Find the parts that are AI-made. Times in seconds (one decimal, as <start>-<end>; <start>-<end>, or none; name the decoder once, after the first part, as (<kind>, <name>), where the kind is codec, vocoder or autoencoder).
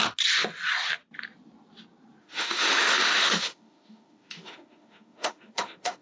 2.2-6.0 (autoencoder, DAC-VAE)